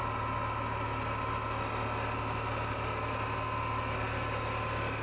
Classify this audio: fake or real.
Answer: real